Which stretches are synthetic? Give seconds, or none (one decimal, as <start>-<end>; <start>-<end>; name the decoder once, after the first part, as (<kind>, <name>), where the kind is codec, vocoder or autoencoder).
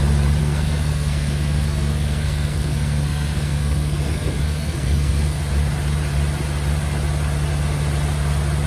0.4-5.4 (codec, SNAC)